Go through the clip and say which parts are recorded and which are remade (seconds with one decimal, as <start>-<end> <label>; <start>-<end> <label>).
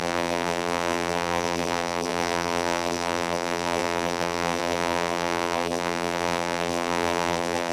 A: 0.0-7.7 remade